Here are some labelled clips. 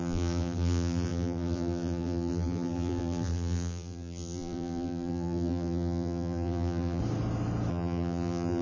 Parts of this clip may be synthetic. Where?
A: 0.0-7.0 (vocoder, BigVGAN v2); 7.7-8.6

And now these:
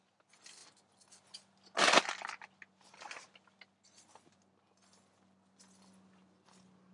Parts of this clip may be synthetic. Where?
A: none

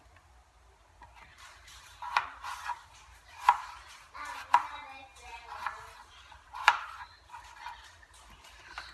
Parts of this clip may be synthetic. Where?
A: 1.3-4.1 (vocoder, BigVGAN v2); 5.1-7.3

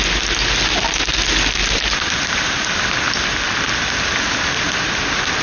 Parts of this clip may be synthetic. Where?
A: 1.6-2.7 (vocoder, BigVGAN v2)

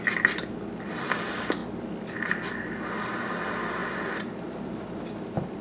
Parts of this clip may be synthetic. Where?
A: 3.8-5.6 (vocoder, BigVGAN v2)